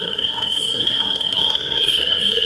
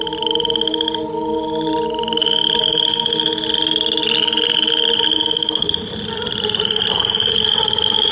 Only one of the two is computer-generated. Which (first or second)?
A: first